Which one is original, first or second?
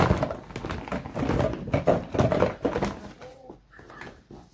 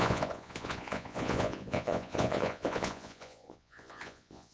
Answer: first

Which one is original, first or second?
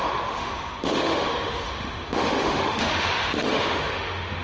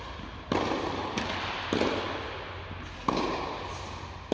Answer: second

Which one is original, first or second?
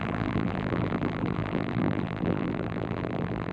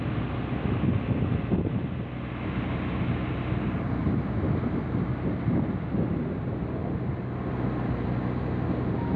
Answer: second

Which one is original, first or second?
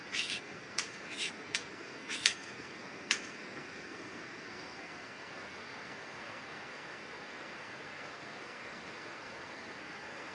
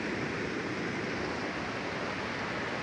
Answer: second